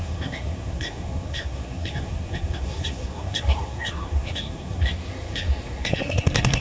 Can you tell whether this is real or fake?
fake